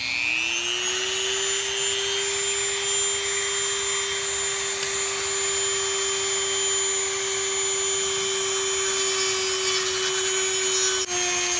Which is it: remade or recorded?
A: recorded